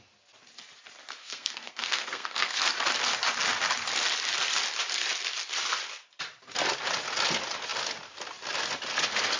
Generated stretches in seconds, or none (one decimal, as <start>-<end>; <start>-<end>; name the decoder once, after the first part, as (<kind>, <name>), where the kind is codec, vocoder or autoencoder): 1.2-2.7 (codec, SNAC)

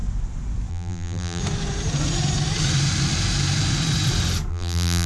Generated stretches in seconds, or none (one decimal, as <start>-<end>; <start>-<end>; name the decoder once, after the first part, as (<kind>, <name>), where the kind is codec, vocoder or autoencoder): 0.7-1.4 (vocoder, BigVGAN v2); 4.5-5.1

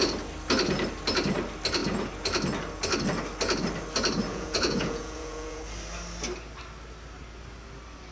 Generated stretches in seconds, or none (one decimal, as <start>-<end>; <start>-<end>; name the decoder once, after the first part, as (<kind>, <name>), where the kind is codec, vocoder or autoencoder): 4.3-5.6 (vocoder, Vocos)